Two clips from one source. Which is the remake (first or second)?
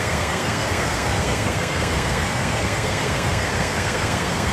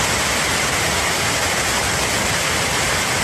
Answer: first